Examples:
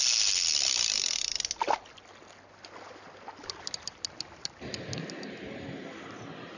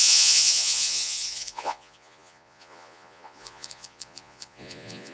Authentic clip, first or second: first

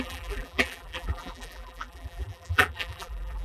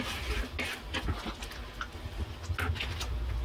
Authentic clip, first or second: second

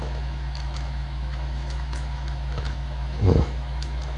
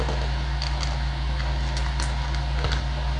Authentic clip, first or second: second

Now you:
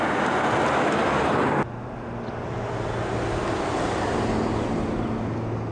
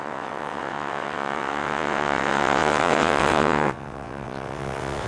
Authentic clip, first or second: first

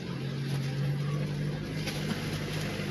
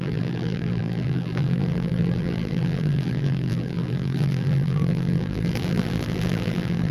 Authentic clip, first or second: first